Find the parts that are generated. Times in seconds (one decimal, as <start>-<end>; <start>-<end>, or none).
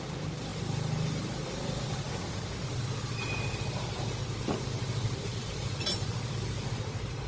none